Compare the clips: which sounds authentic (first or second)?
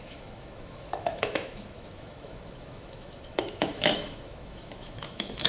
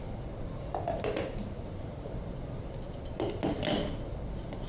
second